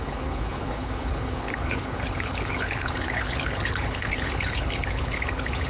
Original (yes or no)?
no